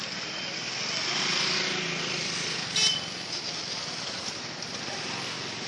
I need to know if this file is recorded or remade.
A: recorded